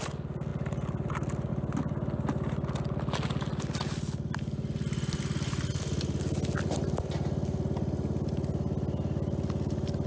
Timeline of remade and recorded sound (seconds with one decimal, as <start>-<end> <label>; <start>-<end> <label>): 0.0-10.1 recorded